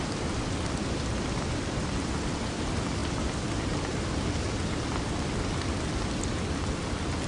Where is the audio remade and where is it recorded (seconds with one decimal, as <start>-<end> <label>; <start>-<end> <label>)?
0.0-7.3 recorded